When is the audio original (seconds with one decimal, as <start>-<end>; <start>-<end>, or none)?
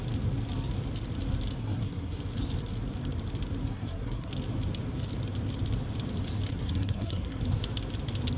0.0-1.6; 2.2-3.7; 4.3-6.5; 7.4-8.4